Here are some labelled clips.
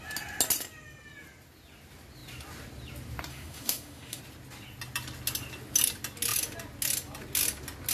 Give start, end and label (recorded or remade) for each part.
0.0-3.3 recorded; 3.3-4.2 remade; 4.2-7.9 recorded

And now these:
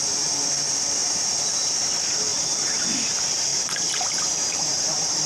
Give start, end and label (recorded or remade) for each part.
0.0-1.0 recorded; 1.0-1.7 remade; 1.7-2.3 recorded; 2.3-2.9 remade; 2.9-3.5 recorded; 3.5-5.3 remade

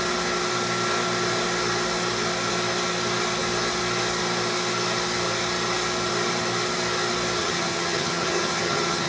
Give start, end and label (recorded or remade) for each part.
0.0-7.4 recorded; 7.4-9.1 remade

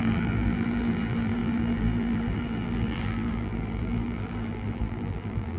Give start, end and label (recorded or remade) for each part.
0.0-5.6 remade

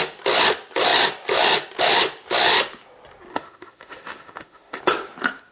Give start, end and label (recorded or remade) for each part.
0.0-3.3 recorded; 3.3-4.8 remade; 4.8-5.5 recorded

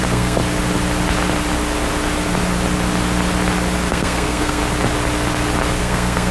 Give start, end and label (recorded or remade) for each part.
0.0-0.4 remade; 0.4-3.9 recorded; 3.9-4.6 remade; 4.6-5.8 recorded; 5.8-6.3 remade

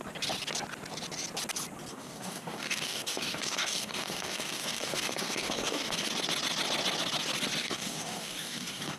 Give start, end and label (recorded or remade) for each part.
0.0-1.9 recorded; 1.9-6.1 remade; 6.1-7.6 recorded; 7.6-9.0 remade

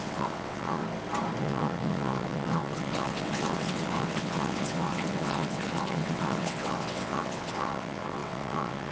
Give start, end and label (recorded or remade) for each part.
0.0-0.8 remade; 0.8-1.4 recorded; 1.4-8.9 remade